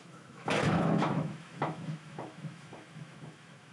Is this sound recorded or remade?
remade